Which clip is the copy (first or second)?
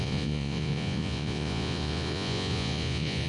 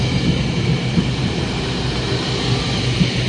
first